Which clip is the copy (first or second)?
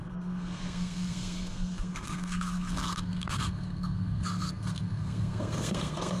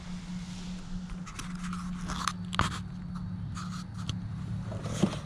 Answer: first